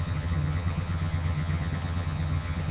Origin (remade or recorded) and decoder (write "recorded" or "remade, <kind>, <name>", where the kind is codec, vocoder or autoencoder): remade, vocoder, HiFi-GAN